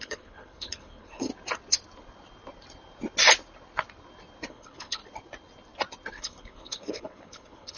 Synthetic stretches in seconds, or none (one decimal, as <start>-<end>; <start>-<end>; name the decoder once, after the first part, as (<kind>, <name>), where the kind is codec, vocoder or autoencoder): 0.0-1.3 (codec, HILCodec); 4.5-5.0; 6.1-7.8